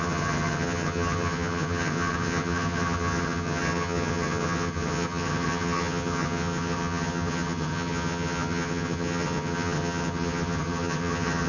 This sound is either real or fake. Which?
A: fake